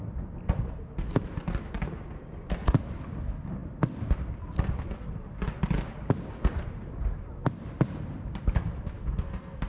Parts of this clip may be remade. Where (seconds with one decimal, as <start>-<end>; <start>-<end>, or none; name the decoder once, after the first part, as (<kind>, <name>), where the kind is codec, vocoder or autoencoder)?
9.0-9.7 (codec, SNAC)